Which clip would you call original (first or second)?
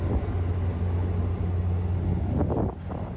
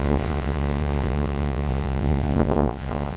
first